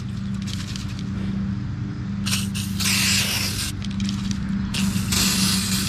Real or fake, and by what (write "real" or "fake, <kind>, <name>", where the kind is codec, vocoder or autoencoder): real